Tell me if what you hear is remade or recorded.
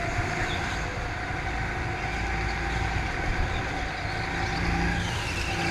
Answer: recorded